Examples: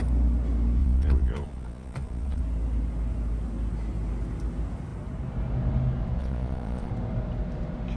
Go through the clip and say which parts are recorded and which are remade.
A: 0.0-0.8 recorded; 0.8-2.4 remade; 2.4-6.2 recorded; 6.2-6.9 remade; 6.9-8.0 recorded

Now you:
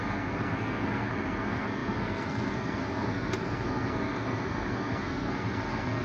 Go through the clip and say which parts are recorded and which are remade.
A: 0.0-6.0 remade